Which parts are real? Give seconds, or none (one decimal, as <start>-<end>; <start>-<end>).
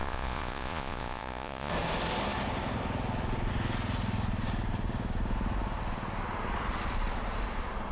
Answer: 1.7-7.9